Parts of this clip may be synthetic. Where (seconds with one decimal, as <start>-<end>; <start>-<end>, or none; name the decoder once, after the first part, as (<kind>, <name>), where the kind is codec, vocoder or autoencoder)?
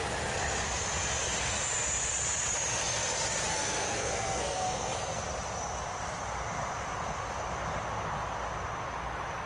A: 3.5-5.2 (codec, SNAC)